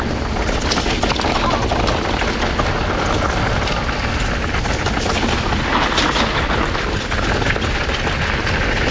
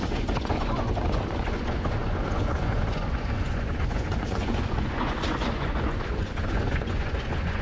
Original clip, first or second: first